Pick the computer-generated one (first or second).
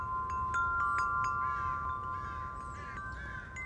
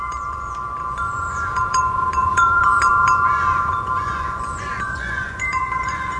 second